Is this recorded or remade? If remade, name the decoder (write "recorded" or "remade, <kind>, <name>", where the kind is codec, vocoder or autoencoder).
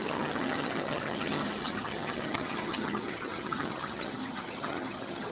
remade, vocoder, HiFi-GAN